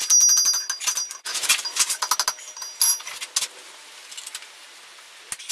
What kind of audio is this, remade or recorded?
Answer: recorded